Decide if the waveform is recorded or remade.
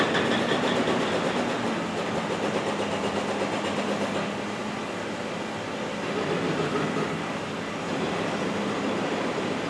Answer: recorded